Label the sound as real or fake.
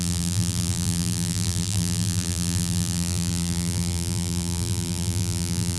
fake